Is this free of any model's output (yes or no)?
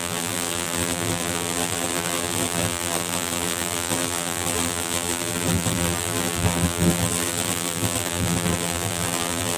no